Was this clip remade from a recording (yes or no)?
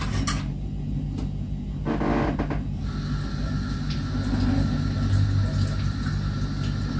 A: no